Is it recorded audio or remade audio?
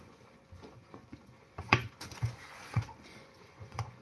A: remade